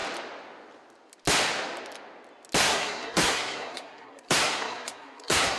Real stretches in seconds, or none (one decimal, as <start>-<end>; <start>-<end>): 0.0-2.6